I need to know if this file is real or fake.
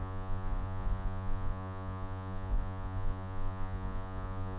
fake